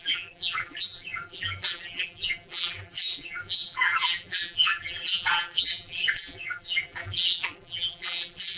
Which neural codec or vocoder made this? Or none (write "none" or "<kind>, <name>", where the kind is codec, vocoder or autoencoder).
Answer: vocoder, BigVGAN v2